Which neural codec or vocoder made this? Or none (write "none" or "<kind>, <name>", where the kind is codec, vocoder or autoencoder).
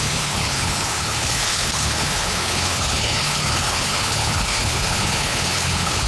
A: codec, HILCodec